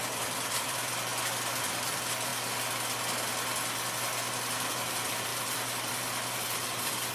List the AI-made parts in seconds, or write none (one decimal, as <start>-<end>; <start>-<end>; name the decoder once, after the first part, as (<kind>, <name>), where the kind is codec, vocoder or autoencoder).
0.0-1.1 (vocoder, BigVGAN v2); 1.6-2.3; 4.7-7.1